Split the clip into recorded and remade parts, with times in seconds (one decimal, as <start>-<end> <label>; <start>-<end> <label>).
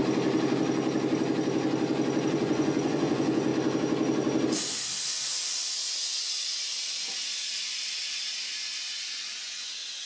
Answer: 0.0-2.3 recorded; 2.3-3.5 remade; 3.5-8.6 recorded; 8.6-10.1 remade